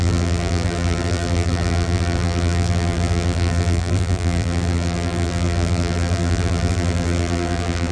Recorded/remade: remade